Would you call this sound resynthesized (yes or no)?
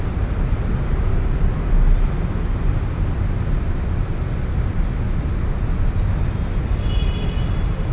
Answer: no